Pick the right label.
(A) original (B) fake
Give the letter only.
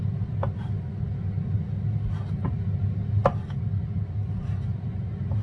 A